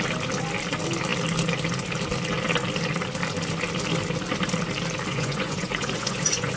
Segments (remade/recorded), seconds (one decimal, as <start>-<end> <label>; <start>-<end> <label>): 0.0-5.1 recorded; 5.1-6.6 remade